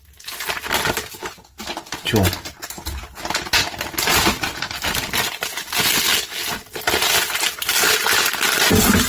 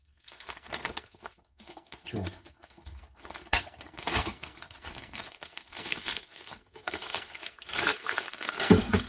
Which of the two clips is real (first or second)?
first